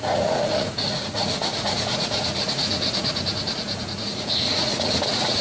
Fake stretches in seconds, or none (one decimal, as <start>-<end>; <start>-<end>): 0.0-5.4